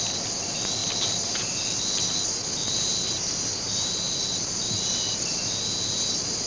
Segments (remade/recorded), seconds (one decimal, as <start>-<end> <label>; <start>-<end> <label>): 0.0-6.5 recorded